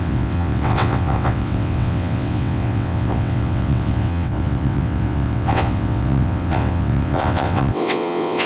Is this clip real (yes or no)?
no